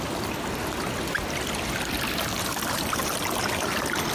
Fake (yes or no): no